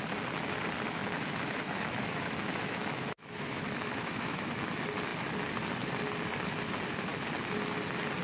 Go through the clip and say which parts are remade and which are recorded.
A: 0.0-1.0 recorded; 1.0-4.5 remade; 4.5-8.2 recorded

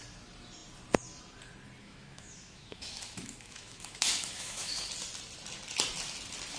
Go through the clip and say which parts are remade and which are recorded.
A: 0.0-1.8 recorded; 1.8-4.9 remade; 4.9-6.6 recorded

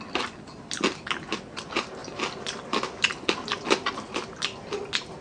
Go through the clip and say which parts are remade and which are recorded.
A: 0.0-5.2 recorded

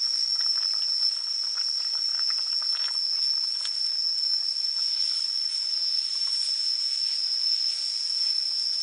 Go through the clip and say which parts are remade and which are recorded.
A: 0.0-8.8 recorded

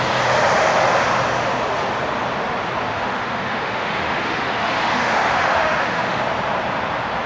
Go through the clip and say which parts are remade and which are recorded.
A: 0.0-2.9 recorded; 2.9-6.2 remade; 6.2-7.3 recorded

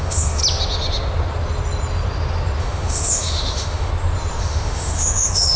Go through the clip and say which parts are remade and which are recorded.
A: 0.0-0.4 remade; 0.4-2.6 recorded; 2.6-3.9 remade; 3.9-4.4 recorded; 4.4-5.6 remade

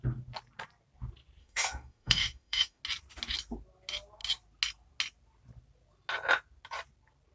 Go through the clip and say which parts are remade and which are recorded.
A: 0.0-1.4 recorded; 1.4-2.8 remade; 2.8-7.3 recorded

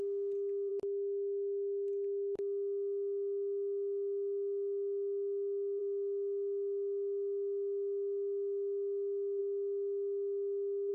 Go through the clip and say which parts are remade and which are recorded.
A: 0.0-0.7 recorded; 0.7-5.8 remade; 5.8-9.4 recorded; 9.4-10.9 remade